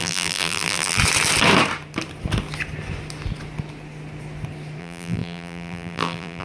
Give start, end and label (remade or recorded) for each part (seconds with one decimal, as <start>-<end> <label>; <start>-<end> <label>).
0.0-1.0 remade; 1.0-4.8 recorded; 4.8-6.4 remade